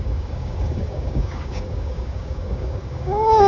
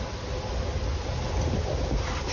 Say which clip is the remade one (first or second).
first